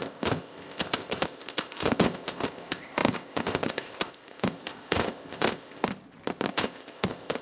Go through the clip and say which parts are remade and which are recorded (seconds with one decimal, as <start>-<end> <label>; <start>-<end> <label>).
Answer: 0.0-5.9 remade; 5.9-6.5 recorded; 6.5-7.4 remade